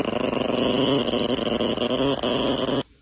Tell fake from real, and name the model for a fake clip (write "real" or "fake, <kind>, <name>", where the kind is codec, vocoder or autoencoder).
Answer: real